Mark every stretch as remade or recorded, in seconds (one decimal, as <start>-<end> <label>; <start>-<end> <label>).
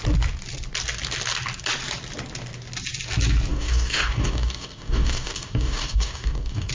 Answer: 0.0-3.5 recorded; 3.5-6.7 remade